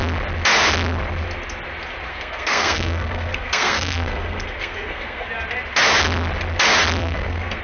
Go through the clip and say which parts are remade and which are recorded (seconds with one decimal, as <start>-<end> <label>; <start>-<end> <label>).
0.0-2.1 recorded; 2.1-5.3 remade; 5.3-7.0 recorded; 7.0-7.6 remade

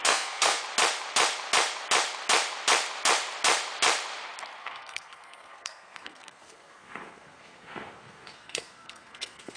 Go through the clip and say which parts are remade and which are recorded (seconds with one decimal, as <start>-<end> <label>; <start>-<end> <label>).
0.0-0.6 remade; 0.6-4.6 recorded; 4.6-9.6 remade

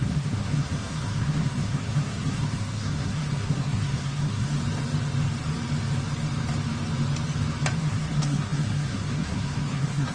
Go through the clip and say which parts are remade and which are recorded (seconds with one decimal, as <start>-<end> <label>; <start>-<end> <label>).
0.0-4.6 remade; 4.6-7.8 recorded; 7.8-10.1 remade

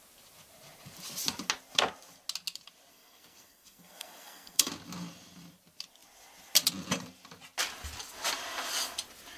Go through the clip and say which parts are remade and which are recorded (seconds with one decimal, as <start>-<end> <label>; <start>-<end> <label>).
0.0-2.9 recorded; 2.9-4.7 remade; 4.7-9.4 recorded

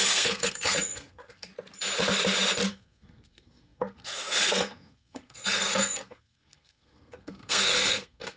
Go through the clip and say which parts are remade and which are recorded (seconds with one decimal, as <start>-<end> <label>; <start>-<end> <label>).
0.0-1.5 remade; 1.5-2.7 recorded; 2.7-8.4 remade

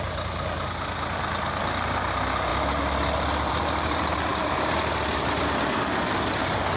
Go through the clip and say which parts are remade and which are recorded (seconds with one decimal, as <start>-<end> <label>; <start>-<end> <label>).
0.0-6.8 recorded